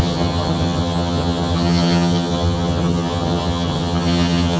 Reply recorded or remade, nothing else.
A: remade